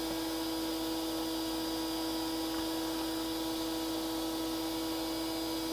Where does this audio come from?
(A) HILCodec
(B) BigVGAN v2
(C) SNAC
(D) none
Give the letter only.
D